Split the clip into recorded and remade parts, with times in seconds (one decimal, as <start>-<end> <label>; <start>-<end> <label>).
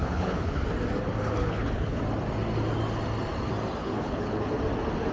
0.0-0.6 remade; 0.6-1.4 recorded; 1.4-2.0 remade; 2.0-3.8 recorded; 3.8-4.6 remade; 4.6-5.1 recorded